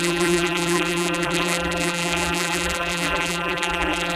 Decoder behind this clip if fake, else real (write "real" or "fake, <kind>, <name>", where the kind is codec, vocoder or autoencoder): fake, vocoder, BigVGAN v2